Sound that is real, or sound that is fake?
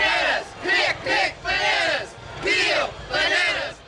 real